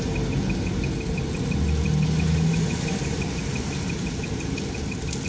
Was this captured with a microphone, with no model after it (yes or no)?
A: yes